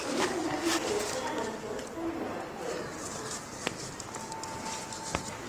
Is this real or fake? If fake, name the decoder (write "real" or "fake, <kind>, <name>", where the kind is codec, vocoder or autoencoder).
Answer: real